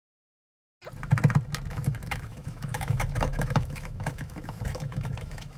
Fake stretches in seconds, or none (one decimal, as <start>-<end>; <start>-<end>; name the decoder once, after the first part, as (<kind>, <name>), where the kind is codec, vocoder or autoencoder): 0.0-0.6 (autoencoder, DAC-VAE); 1.7-5.6